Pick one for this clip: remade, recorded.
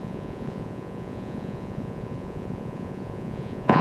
remade